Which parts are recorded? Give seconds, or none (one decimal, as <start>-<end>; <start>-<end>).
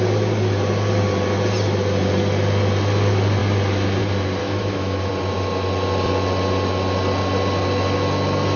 0.0-4.4; 5.1-8.6